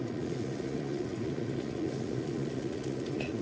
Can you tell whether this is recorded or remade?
remade